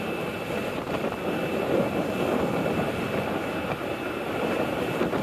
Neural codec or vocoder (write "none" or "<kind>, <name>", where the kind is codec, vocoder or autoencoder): none